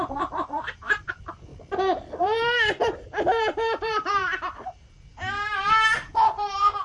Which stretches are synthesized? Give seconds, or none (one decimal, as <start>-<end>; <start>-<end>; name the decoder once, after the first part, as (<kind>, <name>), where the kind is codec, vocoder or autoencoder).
0.0-1.5 (vocoder, BigVGAN v2); 2.2-6.8